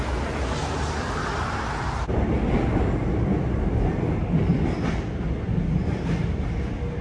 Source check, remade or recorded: recorded